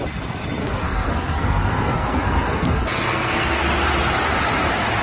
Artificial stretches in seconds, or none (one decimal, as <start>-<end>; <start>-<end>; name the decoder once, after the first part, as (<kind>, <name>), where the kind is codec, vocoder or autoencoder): 0.6-3.6 (codec, SNAC)